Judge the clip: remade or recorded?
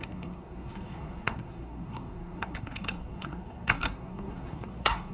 remade